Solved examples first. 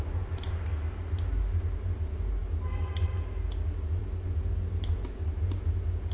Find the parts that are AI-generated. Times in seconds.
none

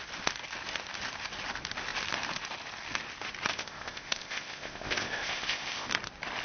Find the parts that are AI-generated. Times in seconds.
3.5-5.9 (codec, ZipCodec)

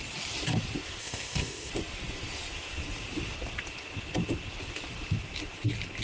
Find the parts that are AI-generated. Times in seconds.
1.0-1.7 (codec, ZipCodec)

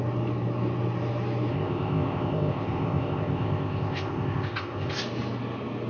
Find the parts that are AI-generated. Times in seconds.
1.5-5.0 (codec, ZipCodec)

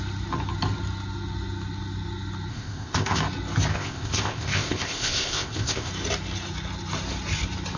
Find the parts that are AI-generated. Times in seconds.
2.5-3.2 (codec, ZipCodec); 3.7-5.9

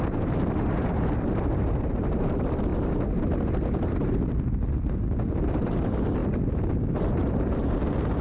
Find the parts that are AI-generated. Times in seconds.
none

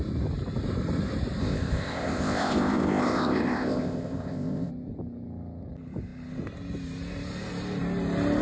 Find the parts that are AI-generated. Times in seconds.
1.4-4.7 (codec, ZipCodec)